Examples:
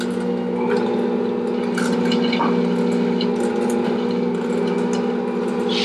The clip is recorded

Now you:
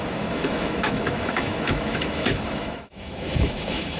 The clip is remade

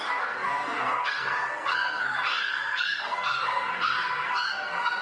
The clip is remade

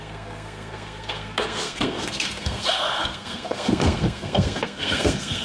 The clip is remade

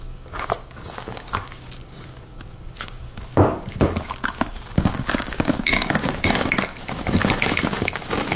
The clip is remade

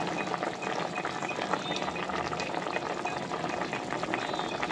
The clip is recorded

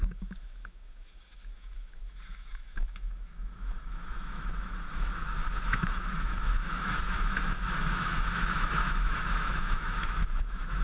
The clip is remade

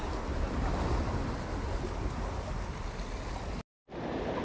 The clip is recorded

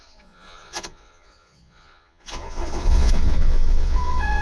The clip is remade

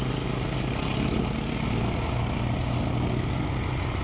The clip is recorded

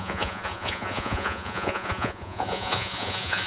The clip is remade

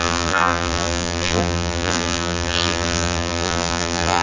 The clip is remade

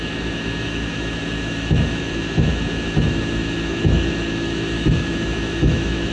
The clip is remade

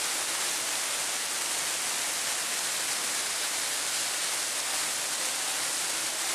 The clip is recorded